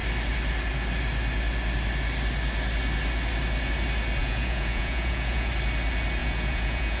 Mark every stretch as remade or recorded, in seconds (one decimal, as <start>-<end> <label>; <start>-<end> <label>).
0.0-4.2 recorded; 4.2-5.5 remade; 5.5-6.2 recorded; 6.2-7.0 remade